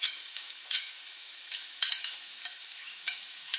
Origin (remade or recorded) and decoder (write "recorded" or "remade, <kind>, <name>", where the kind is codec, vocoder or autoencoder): remade, autoencoder, DAC-VAE